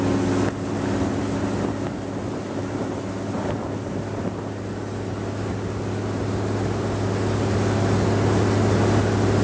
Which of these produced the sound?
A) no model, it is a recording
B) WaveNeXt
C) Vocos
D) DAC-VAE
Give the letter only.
A